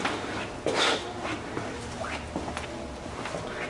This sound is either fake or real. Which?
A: real